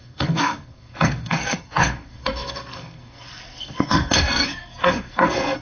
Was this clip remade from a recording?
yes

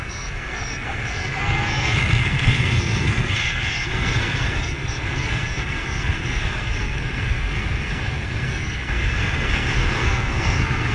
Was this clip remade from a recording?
yes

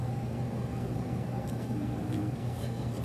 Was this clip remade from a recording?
yes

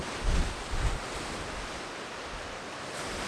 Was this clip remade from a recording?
no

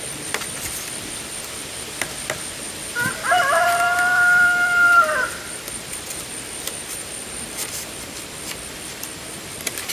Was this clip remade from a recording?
yes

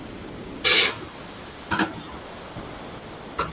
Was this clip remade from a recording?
no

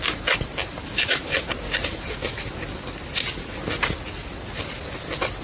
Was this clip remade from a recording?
no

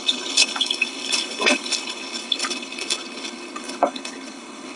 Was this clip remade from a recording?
yes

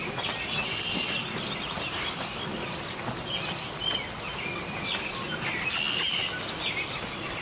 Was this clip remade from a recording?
no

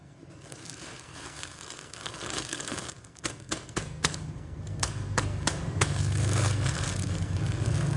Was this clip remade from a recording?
yes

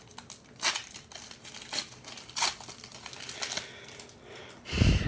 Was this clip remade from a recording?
no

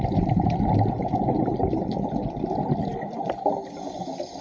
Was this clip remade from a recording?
no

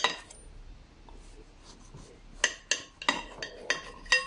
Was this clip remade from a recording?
no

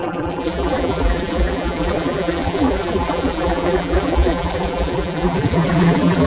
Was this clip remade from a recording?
yes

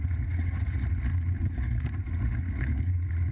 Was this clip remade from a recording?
yes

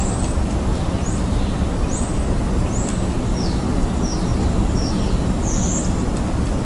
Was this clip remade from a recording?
no